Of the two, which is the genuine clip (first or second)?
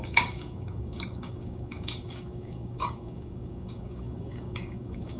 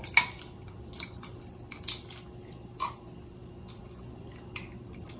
second